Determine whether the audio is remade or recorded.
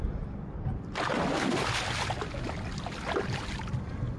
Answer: recorded